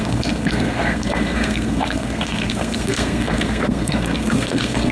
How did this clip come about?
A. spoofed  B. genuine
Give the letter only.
A